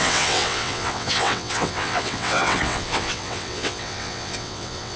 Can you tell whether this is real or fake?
fake